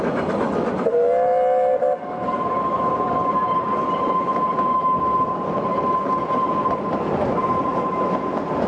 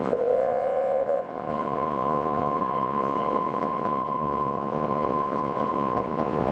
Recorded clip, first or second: first